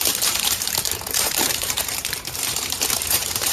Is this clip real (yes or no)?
no